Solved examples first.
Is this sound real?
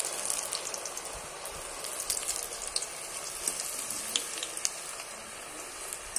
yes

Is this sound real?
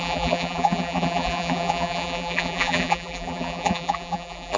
no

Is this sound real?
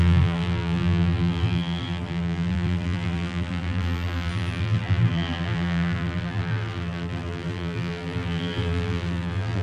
no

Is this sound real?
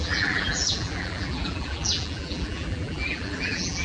no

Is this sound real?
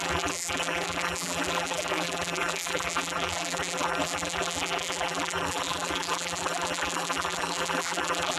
no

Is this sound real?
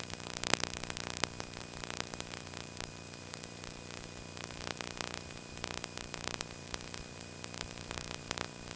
no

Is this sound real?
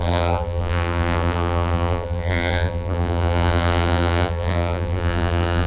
no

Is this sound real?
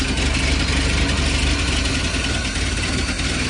yes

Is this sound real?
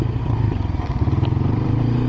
no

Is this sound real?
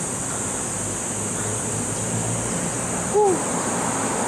yes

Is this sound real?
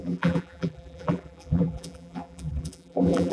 no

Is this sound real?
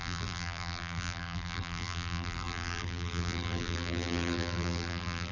no